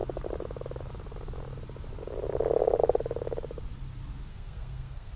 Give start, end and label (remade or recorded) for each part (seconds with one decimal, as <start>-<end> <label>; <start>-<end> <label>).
0.0-4.3 recorded; 4.3-5.2 remade